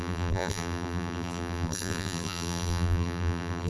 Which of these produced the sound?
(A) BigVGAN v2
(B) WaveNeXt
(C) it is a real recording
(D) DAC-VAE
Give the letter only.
A